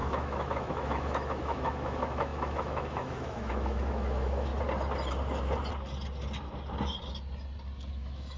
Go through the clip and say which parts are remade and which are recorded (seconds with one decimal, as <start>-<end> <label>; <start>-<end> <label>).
0.0-4.5 remade; 4.5-7.9 recorded; 7.9-8.4 remade